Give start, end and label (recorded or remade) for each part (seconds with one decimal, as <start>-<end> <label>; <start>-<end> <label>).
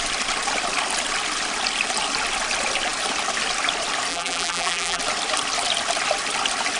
0.0-4.1 recorded; 4.1-5.0 remade; 5.0-6.8 recorded